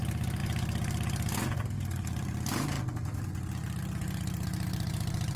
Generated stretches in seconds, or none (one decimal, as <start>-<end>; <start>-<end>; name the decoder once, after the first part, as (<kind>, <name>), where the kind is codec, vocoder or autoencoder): none